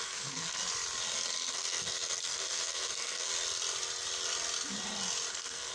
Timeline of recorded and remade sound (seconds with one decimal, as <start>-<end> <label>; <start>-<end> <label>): 0.0-0.6 remade; 0.6-1.5 recorded; 1.5-3.3 remade; 3.3-5.3 recorded; 5.3-5.7 remade